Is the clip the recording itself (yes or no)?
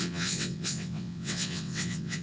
no